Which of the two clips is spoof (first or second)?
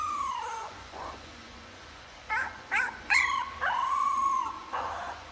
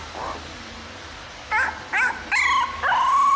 first